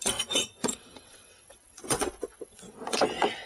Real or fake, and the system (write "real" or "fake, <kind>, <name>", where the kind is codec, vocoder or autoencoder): fake, vocoder, WaveNeXt